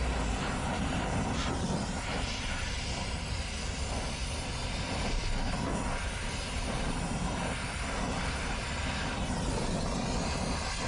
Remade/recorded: recorded